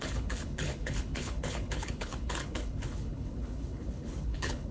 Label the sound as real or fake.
fake